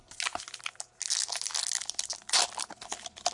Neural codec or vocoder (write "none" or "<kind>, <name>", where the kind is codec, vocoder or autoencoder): none